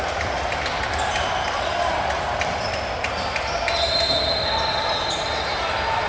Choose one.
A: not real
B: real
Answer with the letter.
B